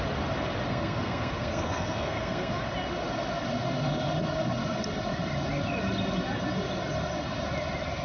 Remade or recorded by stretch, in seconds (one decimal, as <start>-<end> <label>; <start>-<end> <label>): 0.0-0.7 recorded; 0.7-2.5 remade; 2.5-8.0 recorded